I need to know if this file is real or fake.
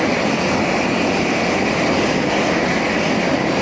real